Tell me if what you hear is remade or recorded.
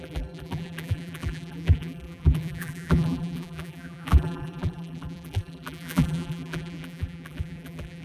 remade